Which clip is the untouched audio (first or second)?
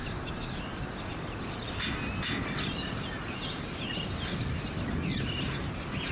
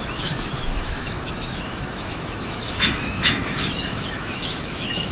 first